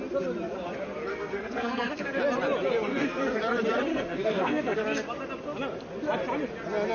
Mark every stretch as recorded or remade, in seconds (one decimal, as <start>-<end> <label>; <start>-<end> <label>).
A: 0.0-1.1 recorded; 1.1-2.2 remade; 2.2-2.9 recorded; 2.9-3.4 remade; 3.4-3.9 recorded; 3.9-4.8 remade; 4.8-6.9 recorded